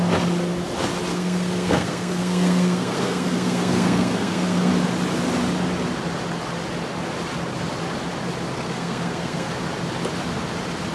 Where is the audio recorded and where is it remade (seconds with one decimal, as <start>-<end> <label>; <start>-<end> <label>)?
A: 0.0-1.1 recorded; 1.1-4.7 remade; 4.7-8.5 recorded; 8.5-9.5 remade; 9.5-10.9 recorded